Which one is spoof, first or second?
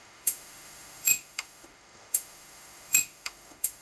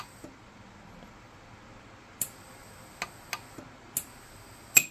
first